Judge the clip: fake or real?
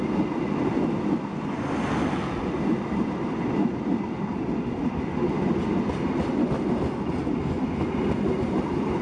real